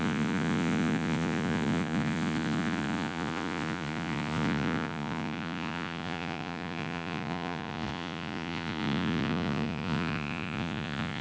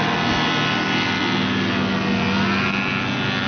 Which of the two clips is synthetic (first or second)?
first